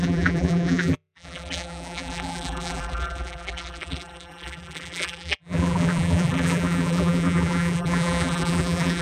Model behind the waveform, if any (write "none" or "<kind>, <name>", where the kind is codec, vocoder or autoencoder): vocoder, BigVGAN v2